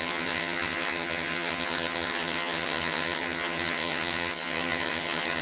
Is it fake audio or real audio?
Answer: fake